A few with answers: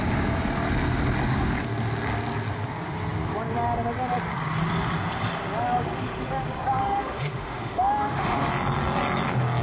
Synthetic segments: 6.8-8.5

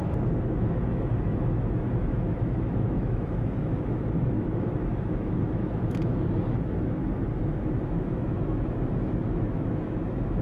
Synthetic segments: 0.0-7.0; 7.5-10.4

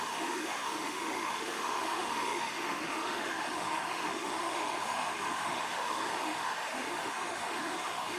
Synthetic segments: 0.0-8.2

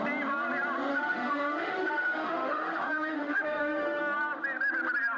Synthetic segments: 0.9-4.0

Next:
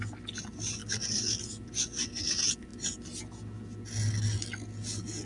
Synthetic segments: none

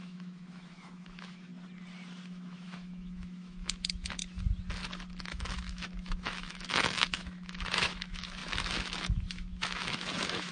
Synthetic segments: 0.0-1.5; 2.3-4.2; 5.2-10.5

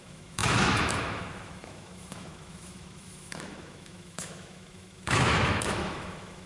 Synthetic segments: 0.0-6.5